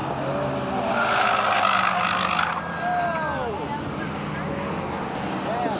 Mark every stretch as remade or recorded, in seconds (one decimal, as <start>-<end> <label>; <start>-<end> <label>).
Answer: 0.0-5.8 recorded